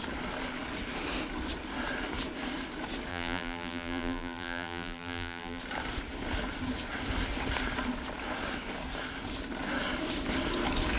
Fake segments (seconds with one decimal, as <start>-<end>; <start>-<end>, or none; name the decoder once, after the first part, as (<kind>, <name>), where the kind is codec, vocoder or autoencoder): 3.1-5.6 (vocoder, BigVGAN v2)